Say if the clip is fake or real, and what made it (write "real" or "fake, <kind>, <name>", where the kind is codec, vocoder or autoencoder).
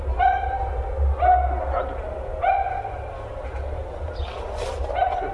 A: real